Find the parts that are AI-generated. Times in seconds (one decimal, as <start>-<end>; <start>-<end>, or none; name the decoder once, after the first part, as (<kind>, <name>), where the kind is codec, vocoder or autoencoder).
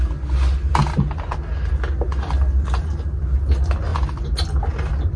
none